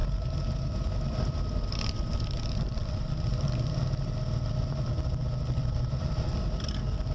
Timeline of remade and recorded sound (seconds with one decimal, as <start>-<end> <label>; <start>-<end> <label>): 0.0-7.1 recorded